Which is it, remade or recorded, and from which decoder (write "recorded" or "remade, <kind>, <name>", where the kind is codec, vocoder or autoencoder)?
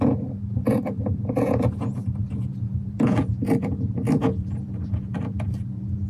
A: remade, vocoder, Vocos